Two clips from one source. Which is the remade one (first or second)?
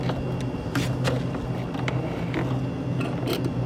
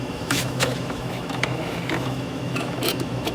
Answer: second